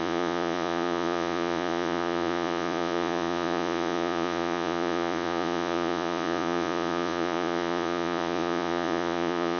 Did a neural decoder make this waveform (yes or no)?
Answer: yes